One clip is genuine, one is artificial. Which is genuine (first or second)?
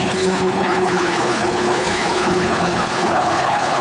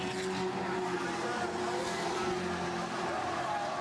second